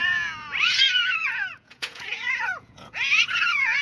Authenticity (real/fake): fake